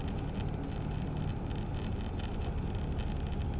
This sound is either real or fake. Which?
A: real